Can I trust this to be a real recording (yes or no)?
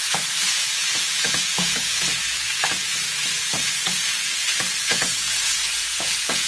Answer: no